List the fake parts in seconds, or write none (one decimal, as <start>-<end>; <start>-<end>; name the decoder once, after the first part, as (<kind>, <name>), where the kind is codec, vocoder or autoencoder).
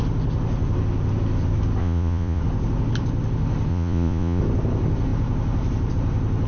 1.8-2.4 (vocoder, Vocos); 3.7-4.4